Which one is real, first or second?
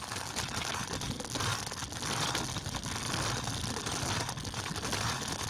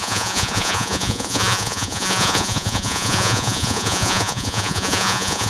first